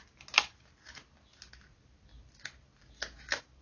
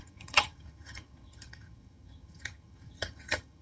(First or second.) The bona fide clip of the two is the first